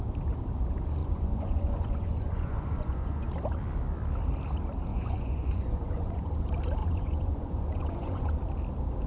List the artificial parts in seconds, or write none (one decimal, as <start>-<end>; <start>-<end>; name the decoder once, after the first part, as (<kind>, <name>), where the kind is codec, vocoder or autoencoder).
1.0-3.3 (vocoder, Vocos); 4.9-6.3; 6.8-8.3